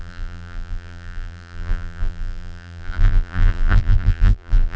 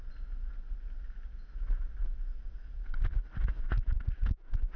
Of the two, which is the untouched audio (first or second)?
second